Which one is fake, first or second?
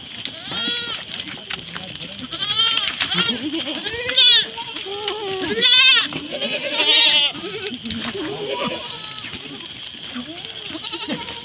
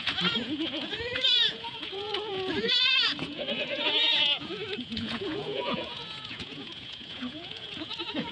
second